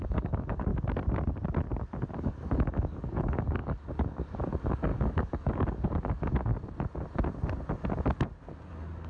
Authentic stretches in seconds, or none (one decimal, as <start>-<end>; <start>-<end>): 0.7-2.1; 6.5-8.7